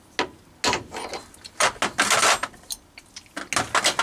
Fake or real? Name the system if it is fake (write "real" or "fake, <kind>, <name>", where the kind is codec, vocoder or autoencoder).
real